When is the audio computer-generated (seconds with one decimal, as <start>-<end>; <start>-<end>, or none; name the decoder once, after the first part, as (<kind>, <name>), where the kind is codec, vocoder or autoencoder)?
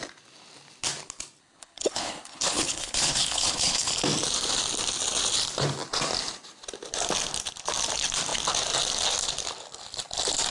1.4-3.9 (codec, HILCodec)